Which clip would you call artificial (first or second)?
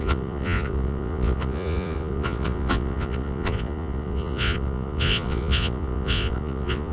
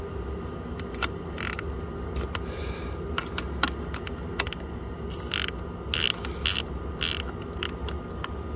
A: first